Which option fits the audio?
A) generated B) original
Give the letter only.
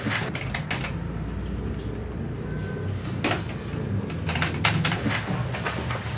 B